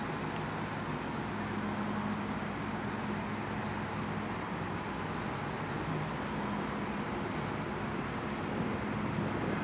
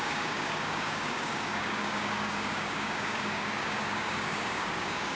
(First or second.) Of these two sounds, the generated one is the second